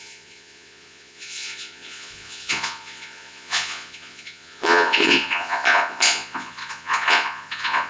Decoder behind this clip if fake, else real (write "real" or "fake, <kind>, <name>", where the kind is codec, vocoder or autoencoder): fake, vocoder, Vocos